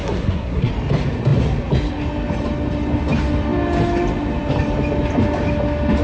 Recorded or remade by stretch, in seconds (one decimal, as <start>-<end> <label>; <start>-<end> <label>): 0.0-0.7 remade; 0.7-6.0 recorded